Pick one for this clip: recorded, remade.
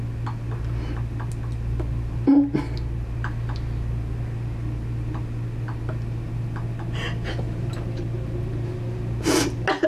recorded